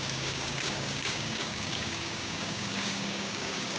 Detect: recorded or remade remade